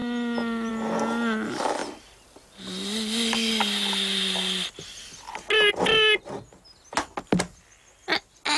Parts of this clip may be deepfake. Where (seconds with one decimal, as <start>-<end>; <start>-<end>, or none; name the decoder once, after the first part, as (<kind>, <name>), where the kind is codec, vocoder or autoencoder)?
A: none